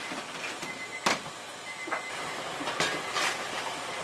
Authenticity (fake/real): real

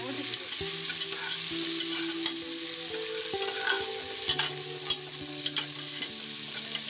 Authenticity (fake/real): real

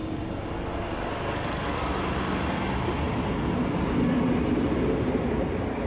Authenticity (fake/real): real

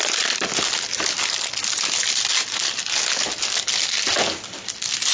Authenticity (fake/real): real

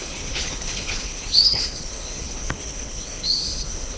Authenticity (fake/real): fake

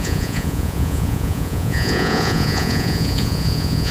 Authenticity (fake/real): fake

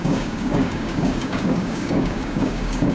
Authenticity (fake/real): fake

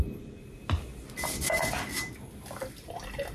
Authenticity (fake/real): real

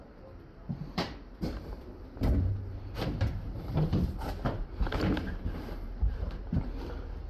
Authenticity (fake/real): fake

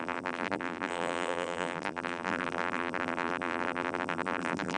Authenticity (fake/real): fake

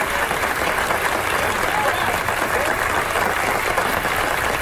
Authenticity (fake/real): real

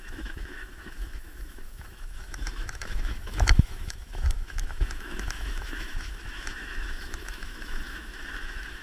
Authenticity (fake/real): fake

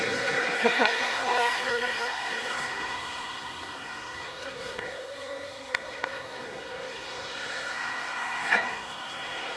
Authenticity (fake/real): fake